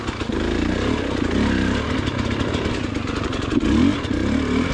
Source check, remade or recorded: recorded